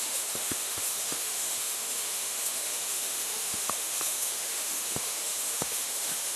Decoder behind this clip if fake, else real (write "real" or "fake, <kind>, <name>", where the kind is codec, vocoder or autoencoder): fake, autoencoder, DAC-VAE